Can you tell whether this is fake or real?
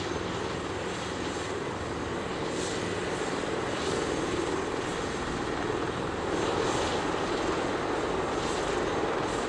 real